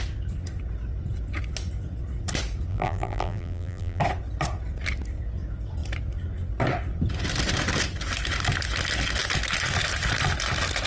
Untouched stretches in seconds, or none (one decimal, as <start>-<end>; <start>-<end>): 0.0-2.7; 4.0-10.9